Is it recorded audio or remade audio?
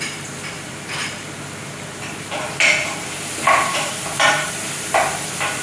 remade